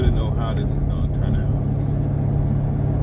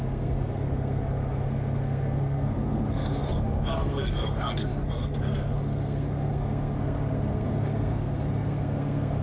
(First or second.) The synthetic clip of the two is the second